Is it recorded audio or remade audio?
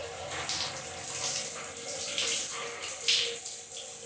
recorded